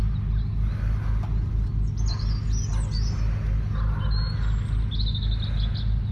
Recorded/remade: recorded